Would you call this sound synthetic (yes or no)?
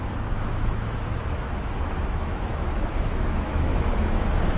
yes